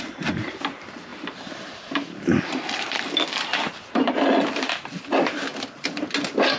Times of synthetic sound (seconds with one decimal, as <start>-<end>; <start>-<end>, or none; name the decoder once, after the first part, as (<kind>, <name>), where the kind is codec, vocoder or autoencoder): 1.1-5.1 (vocoder, BigVGAN v2); 5.5-6.0